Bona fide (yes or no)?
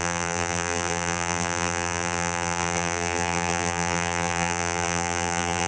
no